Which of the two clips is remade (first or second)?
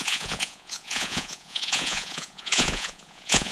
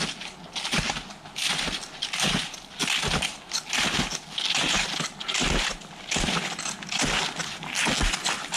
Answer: first